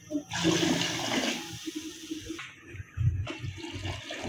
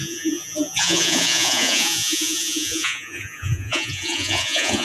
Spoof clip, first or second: second